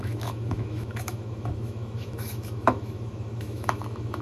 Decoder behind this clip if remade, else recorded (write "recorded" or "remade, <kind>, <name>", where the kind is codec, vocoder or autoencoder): remade, autoencoder, DAC-VAE